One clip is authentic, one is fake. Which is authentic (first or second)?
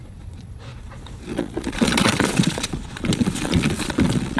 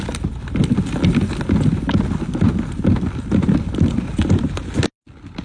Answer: second